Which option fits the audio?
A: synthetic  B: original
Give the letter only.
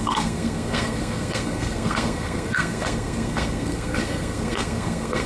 A